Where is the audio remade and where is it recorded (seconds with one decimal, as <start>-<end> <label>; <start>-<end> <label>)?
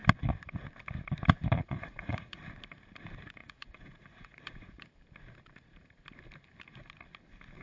0.0-1.6 recorded; 1.6-2.4 remade; 2.4-3.4 recorded; 3.4-4.8 remade; 4.8-7.6 recorded